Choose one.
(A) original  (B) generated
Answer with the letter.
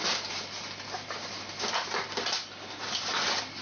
A